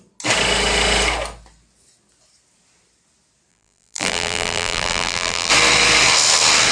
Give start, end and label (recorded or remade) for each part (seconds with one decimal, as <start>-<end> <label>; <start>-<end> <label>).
0.0-3.5 recorded; 3.5-5.5 remade; 5.5-6.7 recorded